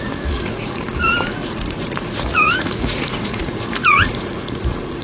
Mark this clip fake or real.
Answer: fake